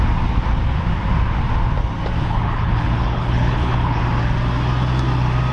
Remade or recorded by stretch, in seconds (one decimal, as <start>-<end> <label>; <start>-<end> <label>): 0.0-2.2 recorded; 2.2-4.0 remade; 4.0-5.5 recorded